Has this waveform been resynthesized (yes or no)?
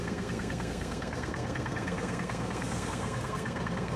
yes